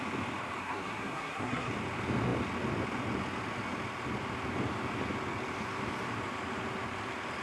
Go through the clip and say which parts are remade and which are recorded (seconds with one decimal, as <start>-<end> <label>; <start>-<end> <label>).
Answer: 0.0-0.6 recorded; 0.6-1.7 remade; 1.7-7.4 recorded